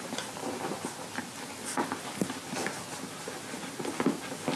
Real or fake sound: real